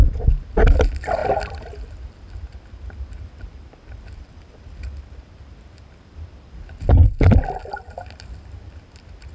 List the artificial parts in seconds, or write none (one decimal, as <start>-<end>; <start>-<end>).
none